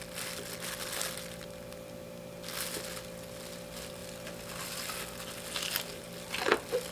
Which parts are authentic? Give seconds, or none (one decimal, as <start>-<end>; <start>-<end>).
0.0-6.9